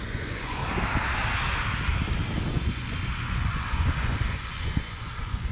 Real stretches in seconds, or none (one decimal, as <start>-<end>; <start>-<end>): 0.6-2.5